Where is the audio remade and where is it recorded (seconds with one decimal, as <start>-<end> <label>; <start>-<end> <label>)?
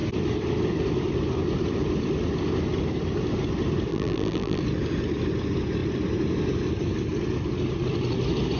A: 0.0-3.9 recorded; 3.9-4.6 remade; 4.6-8.6 recorded